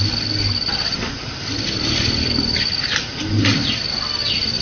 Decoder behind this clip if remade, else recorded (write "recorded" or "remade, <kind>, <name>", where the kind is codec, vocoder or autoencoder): recorded